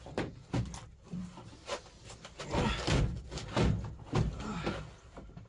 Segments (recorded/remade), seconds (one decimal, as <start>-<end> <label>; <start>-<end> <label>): 0.0-5.5 recorded